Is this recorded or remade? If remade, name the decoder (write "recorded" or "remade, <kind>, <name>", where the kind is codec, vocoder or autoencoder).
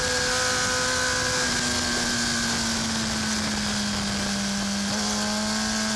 recorded